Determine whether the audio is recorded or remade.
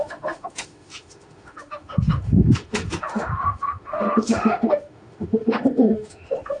remade